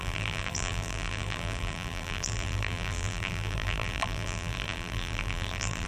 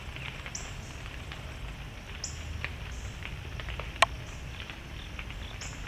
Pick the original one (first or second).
second